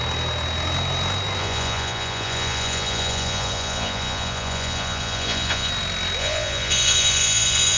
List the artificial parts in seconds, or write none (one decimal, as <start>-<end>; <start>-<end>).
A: 1.4-5.7; 6.2-7.8